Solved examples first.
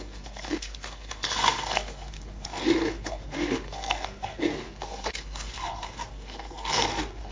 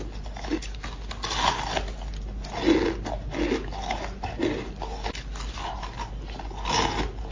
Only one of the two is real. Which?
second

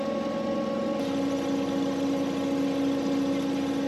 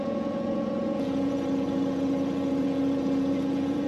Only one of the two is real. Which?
first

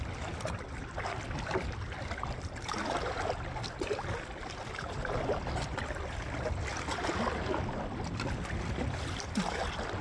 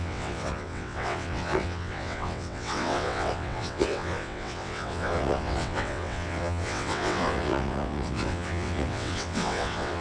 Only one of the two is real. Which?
first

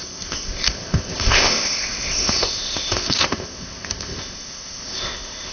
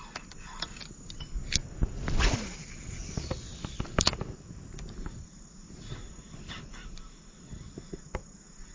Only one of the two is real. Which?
second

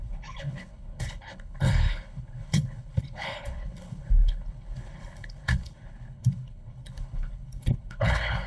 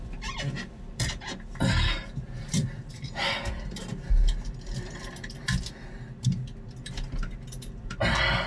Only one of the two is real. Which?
second